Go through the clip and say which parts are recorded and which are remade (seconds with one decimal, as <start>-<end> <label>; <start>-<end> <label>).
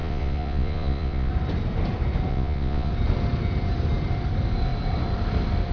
0.0-1.3 remade; 1.3-2.3 recorded; 2.3-2.9 remade; 2.9-5.7 recorded